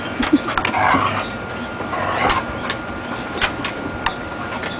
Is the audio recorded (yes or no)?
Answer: yes